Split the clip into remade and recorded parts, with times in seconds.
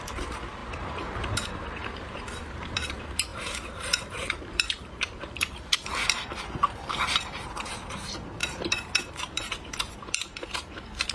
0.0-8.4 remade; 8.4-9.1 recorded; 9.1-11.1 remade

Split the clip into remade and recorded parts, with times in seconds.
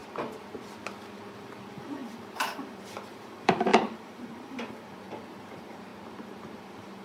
0.0-1.4 recorded; 1.4-5.9 remade; 5.9-6.6 recorded; 6.6-7.0 remade